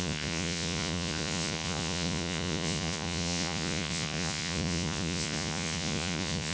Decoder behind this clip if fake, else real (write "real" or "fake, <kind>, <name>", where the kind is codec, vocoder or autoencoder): fake, vocoder, Vocos